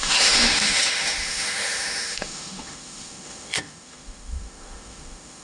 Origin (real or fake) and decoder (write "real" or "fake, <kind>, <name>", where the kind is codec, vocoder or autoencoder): fake, autoencoder, DAC-VAE